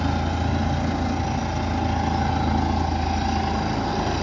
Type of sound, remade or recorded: recorded